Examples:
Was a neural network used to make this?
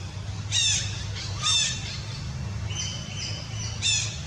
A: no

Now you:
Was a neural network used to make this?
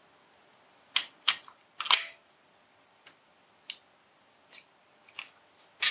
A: no